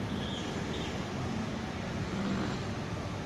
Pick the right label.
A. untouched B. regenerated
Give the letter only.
A